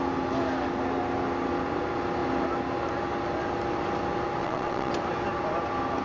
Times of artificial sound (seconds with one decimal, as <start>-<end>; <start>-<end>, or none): 4.4-4.9